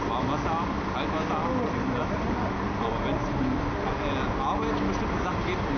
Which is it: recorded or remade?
recorded